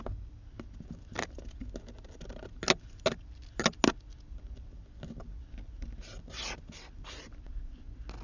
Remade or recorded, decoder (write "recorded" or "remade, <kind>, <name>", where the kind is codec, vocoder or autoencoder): recorded